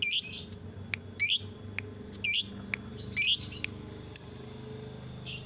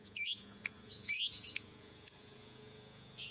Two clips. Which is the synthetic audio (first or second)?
second